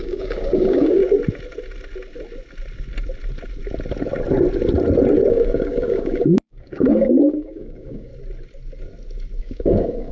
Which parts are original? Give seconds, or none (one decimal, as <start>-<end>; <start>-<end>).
1.0-5.3; 8.1-9.4